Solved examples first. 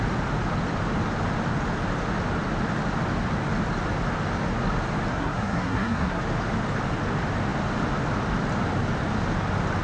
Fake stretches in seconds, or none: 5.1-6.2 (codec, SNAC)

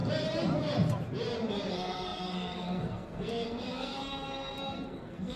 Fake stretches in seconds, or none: 1.7-5.4 (codec, SNAC)

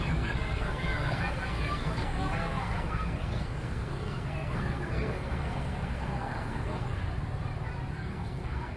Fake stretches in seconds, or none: 0.0-7.0 (codec, SNAC); 7.9-8.8

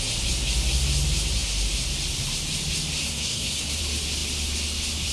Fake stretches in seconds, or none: 3.0-3.8 (codec, SNAC)

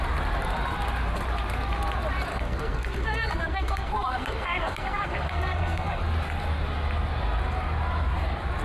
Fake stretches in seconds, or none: 2.3-6.0 (codec, SNAC)

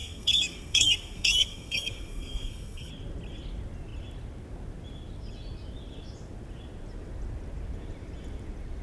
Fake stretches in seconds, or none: 0.0-2.9 (codec, SNAC)

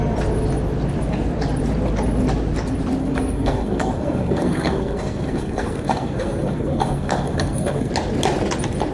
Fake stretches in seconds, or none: 3.0-7.9 (codec, SNAC)

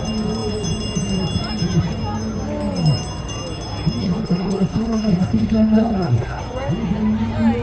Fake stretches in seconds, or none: 4.0-6.4 (codec, SNAC)